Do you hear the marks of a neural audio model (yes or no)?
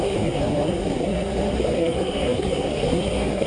yes